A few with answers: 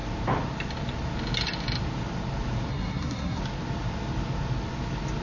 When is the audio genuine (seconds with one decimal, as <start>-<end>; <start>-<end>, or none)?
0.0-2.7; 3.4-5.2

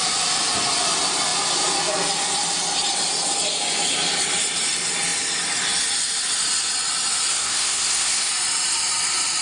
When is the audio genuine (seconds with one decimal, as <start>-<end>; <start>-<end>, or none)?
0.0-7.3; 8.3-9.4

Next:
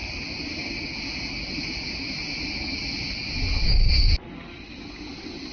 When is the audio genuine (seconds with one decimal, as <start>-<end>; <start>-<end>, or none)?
0.0-5.5

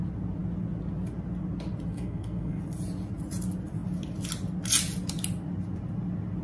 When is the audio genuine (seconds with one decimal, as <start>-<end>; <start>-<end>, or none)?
0.0-1.9; 2.6-6.4

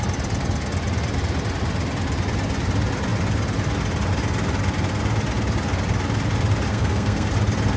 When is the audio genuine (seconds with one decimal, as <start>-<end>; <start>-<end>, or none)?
0.0-6.7; 7.3-7.8

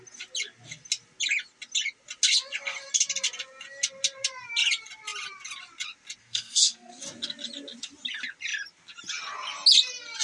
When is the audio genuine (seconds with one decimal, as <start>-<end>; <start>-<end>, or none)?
0.0-6.2; 7.0-10.2